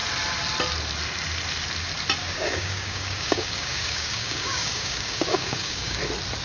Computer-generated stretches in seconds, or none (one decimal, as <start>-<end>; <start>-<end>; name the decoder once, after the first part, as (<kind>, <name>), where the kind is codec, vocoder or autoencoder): 2.2-6.0 (codec, DAC)